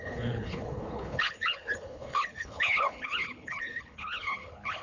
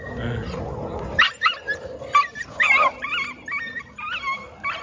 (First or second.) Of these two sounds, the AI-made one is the first